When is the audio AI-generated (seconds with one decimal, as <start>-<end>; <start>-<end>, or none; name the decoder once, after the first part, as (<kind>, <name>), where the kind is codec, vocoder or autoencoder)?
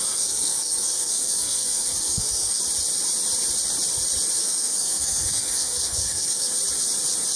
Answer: 0.0-2.6 (codec, SNAC); 4.4-6.5